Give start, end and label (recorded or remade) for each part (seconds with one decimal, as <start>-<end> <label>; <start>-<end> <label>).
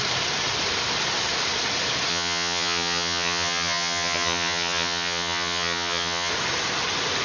0.0-2.1 recorded; 2.1-6.3 remade; 6.3-7.2 recorded